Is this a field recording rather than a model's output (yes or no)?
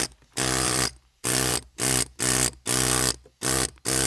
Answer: yes